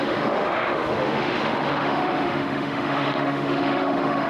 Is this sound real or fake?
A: fake